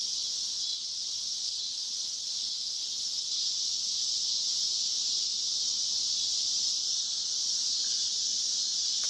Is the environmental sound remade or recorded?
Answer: recorded